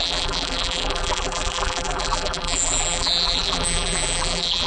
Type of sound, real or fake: fake